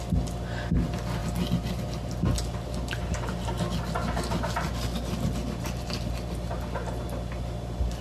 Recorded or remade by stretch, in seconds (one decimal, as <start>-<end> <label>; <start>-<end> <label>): 0.0-8.0 recorded

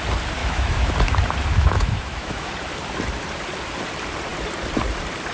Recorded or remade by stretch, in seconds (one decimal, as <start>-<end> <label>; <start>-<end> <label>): 0.0-0.4 recorded; 0.4-0.9 remade; 0.9-1.5 recorded; 1.5-2.5 remade; 2.5-5.3 recorded